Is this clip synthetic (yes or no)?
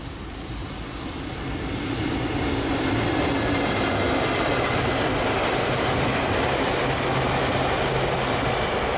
no